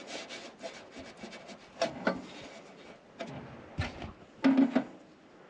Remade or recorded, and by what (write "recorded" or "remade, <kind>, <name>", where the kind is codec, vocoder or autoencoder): recorded